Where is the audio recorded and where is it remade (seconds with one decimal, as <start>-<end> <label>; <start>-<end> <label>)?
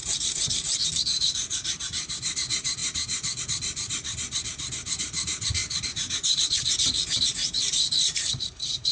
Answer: 0.0-8.9 remade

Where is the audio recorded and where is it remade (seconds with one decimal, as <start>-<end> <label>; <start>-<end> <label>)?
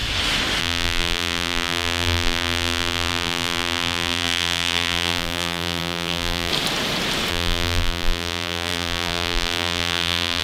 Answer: 0.0-0.6 recorded; 0.6-6.5 remade; 6.5-7.3 recorded; 7.3-10.4 remade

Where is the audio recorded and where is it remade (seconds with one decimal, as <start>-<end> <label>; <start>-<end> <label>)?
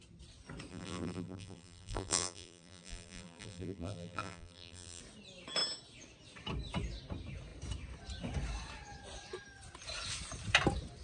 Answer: 0.0-0.7 recorded; 0.7-5.0 remade; 5.0-11.0 recorded